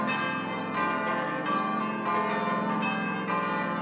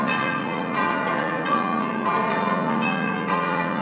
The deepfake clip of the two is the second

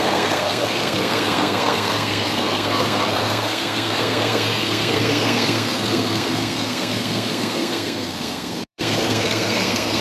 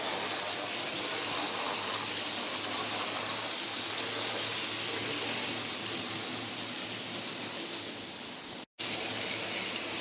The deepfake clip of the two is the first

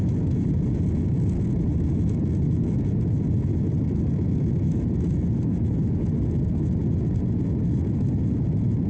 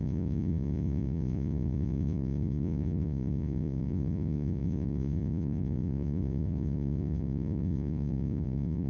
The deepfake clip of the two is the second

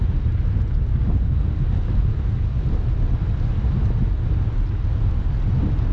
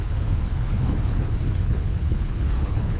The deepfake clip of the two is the second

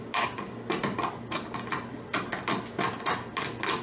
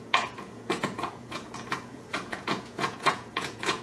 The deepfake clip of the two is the second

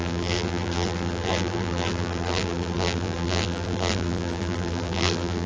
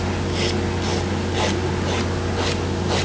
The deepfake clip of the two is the first